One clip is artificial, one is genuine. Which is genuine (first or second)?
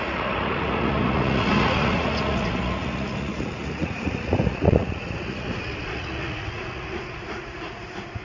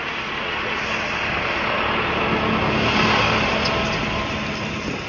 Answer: second